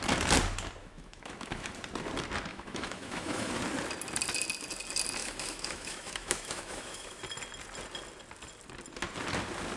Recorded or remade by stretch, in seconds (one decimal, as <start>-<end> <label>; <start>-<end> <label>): 0.0-0.8 recorded; 0.8-1.7 remade; 1.7-2.5 recorded; 2.5-3.5 remade; 3.5-5.2 recorded; 5.2-7.2 remade; 7.2-9.8 recorded